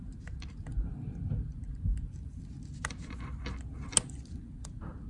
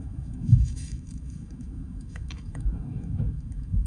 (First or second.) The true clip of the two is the first